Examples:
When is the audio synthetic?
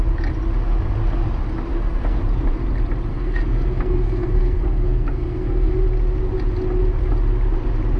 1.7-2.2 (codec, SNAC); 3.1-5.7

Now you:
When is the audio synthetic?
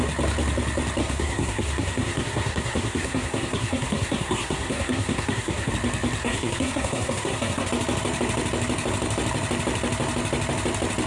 1.0-5.7 (codec, SNAC); 6.2-7.7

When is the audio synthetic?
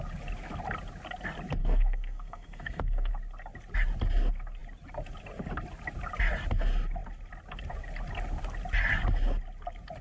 1.6-3.1 (codec, SNAC)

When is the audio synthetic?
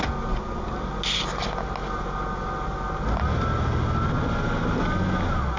none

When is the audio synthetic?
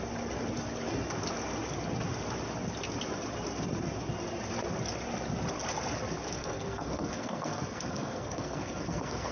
6.4-9.3 (codec, SNAC)